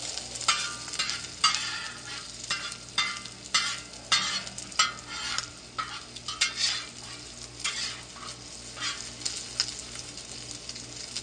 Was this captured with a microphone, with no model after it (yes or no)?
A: yes